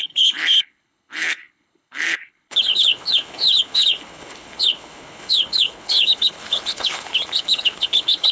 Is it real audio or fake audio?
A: fake